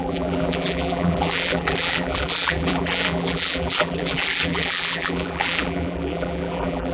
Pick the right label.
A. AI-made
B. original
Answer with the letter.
A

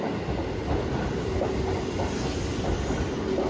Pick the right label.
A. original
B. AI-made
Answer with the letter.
A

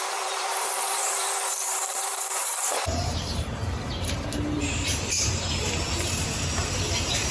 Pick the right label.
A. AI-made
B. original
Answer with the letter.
A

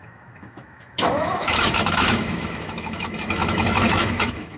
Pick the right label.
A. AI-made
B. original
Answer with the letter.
A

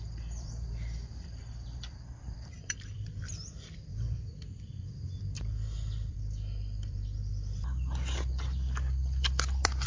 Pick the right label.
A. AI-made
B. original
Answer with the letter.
A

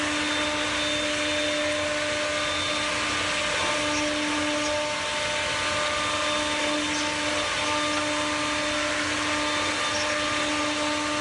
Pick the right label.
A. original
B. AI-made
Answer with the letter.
A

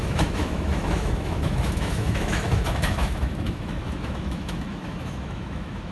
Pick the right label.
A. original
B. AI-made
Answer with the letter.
B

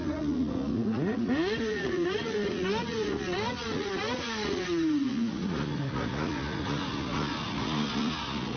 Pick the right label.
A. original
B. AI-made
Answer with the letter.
B